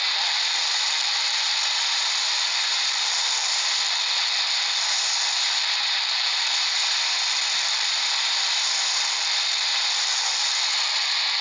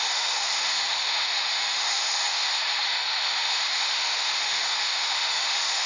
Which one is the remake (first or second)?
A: second